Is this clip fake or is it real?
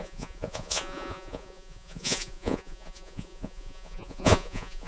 fake